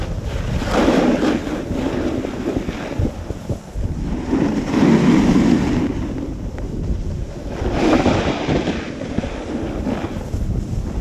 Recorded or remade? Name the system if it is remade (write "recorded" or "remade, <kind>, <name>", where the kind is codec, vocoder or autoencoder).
recorded